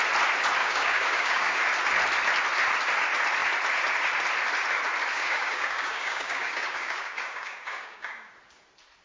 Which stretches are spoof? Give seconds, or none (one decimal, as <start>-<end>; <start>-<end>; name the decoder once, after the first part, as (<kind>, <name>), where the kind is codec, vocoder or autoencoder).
0.6-1.6 (codec, DAC); 5.1-8.3